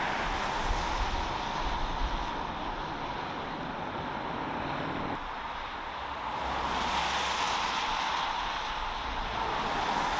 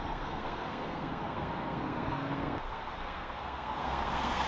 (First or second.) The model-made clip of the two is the second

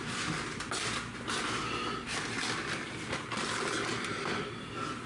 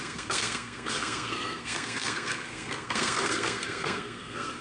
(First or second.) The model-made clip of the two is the second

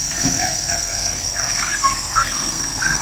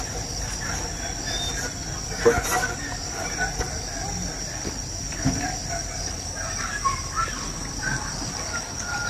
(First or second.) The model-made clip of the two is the first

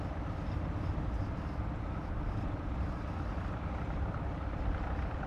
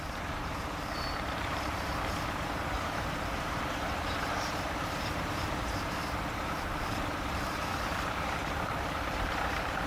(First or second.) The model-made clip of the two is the second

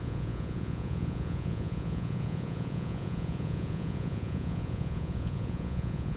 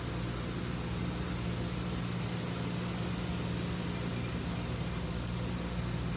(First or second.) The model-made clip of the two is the first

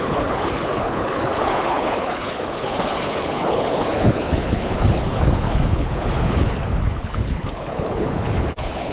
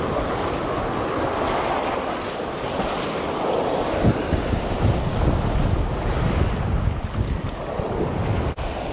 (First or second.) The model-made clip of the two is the first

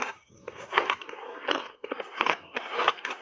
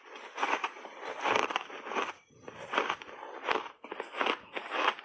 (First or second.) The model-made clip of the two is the first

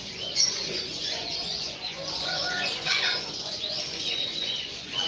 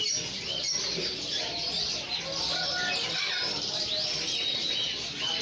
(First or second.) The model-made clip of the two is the first